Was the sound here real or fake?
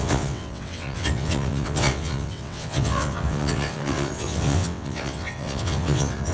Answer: fake